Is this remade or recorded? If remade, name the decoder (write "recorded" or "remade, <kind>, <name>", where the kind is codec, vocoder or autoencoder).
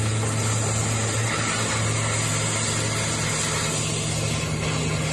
recorded